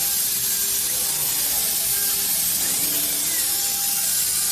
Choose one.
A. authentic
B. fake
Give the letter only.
A